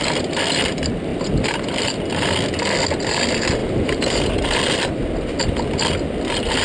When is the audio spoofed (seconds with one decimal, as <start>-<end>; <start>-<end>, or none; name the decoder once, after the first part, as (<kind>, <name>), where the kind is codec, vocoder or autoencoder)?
3.6-4.4 (vocoder, BigVGAN v2)